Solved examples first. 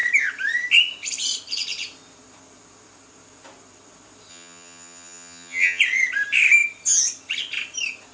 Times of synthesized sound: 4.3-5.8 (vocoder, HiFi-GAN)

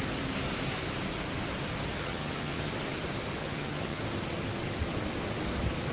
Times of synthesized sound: 2.0-2.7 (vocoder, HiFi-GAN); 3.4-4.0